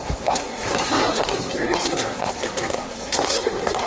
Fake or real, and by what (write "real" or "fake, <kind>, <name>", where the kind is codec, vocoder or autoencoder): fake, codec, SNAC